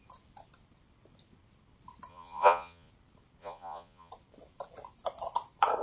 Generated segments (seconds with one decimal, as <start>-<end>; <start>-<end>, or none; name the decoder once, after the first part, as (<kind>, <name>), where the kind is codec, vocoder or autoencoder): 2.1-2.9 (vocoder, Vocos); 3.4-4.1